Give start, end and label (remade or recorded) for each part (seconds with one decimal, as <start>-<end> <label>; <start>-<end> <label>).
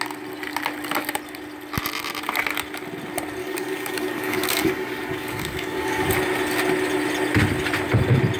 0.0-3.4 recorded; 3.4-6.1 remade; 6.1-8.4 recorded